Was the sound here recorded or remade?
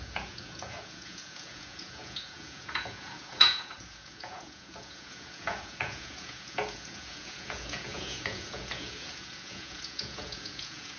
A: remade